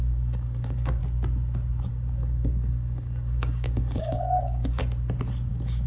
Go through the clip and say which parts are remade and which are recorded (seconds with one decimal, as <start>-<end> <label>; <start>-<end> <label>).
0.0-1.0 remade; 1.0-1.9 recorded; 1.9-4.8 remade; 4.8-5.5 recorded; 5.5-5.9 remade